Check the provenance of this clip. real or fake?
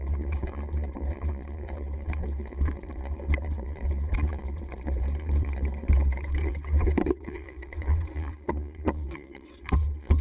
fake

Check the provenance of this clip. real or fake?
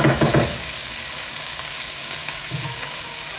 fake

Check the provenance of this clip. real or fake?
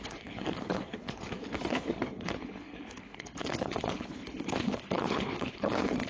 fake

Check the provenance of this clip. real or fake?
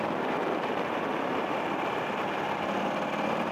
real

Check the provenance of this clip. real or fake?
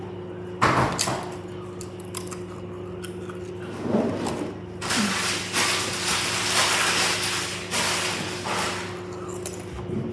real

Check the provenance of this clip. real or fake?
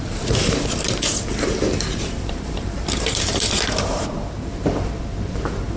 fake